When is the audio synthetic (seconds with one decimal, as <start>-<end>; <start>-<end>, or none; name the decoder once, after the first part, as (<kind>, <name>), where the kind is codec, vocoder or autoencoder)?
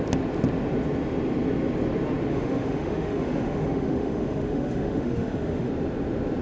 2.3-5.7 (autoencoder, DAC-VAE)